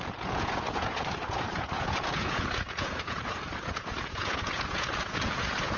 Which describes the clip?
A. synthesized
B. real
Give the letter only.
A